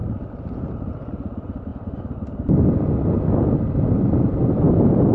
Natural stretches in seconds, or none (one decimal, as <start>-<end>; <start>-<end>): 0.9-5.1